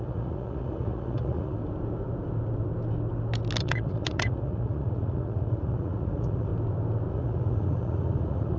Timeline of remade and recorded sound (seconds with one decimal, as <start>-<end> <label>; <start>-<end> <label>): 0.0-1.6 remade; 1.6-3.6 recorded; 3.6-6.5 remade; 6.5-7.1 recorded; 7.1-8.6 remade